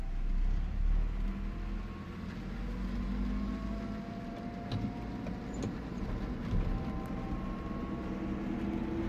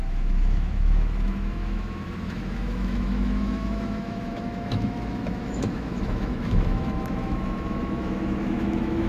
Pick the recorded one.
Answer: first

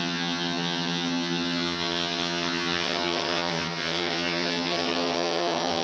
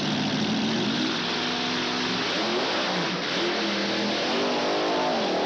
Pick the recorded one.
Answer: second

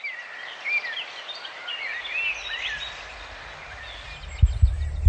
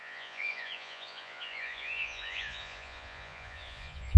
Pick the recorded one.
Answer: first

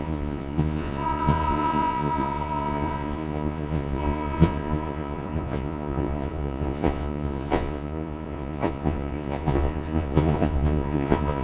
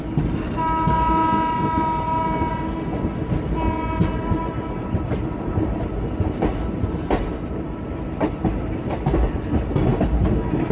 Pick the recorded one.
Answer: second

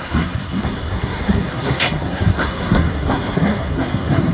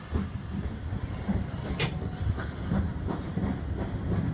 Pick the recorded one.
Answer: second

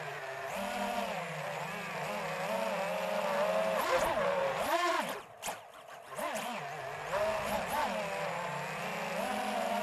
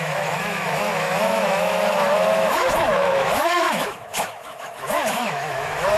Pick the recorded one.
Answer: first